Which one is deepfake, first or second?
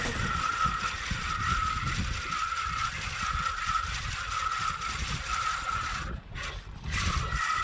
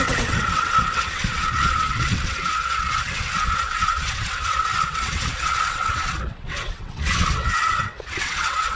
second